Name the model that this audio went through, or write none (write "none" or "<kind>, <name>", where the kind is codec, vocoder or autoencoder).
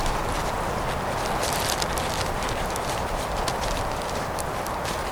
none